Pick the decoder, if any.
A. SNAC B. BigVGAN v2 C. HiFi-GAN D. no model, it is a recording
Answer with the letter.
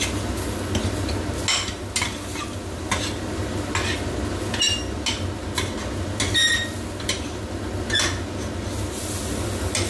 D